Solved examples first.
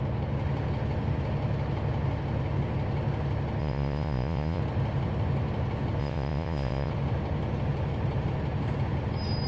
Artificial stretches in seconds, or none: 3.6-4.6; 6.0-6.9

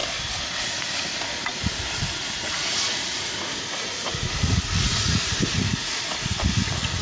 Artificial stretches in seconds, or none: 1.4-7.0

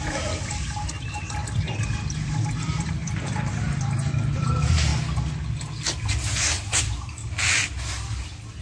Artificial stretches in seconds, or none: 0.0-1.4; 2.5-4.9; 6.0-7.2

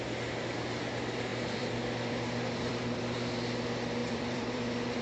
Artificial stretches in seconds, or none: 1.3-3.0; 4.0-5.0

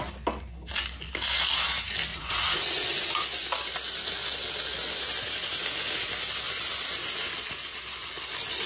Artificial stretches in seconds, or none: 2.1-3.1